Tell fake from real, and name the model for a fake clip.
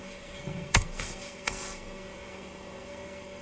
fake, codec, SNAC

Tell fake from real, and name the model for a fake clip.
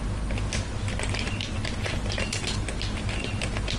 real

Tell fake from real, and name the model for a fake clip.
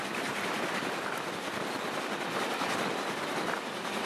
real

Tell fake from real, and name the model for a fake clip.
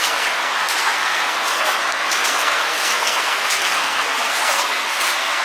fake, codec, SNAC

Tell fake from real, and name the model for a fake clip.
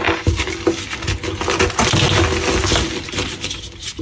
real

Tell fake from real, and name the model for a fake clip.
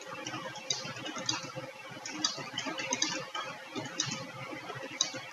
real